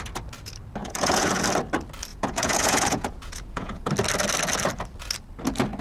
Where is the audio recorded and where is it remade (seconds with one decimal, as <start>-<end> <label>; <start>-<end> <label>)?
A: 0.0-0.8 recorded; 0.8-1.4 remade; 1.4-2.1 recorded; 2.1-3.9 remade; 3.9-5.8 recorded